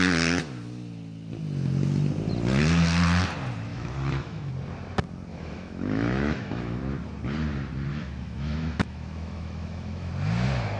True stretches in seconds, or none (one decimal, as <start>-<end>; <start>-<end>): 0.0-3.7; 4.5-5.3; 6.8-7.9; 10.1-10.8